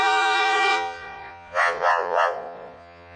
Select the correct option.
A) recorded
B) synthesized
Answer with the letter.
B